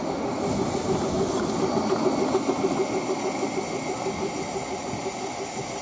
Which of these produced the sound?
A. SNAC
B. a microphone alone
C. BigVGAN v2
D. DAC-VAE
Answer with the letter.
B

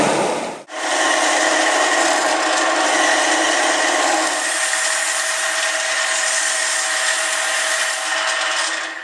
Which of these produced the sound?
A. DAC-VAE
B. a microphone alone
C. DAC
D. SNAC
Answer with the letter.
B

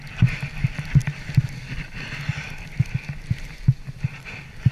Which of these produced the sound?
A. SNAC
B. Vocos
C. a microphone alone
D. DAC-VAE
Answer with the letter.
C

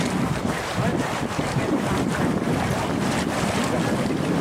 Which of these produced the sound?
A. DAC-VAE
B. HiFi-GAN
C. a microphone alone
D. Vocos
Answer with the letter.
C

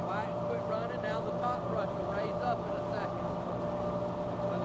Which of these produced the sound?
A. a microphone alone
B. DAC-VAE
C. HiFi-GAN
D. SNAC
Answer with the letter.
A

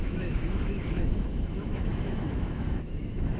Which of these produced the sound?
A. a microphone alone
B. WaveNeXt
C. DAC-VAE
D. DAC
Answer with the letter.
C